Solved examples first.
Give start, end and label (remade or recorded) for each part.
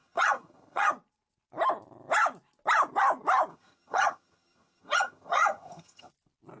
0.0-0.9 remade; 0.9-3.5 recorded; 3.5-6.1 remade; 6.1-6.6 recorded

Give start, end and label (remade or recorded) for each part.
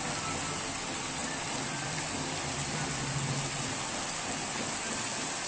0.0-5.5 recorded